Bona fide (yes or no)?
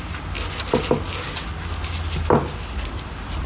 yes